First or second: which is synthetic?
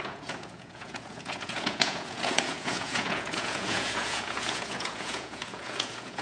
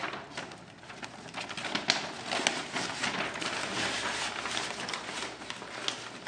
first